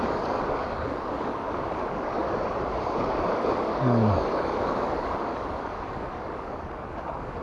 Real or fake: fake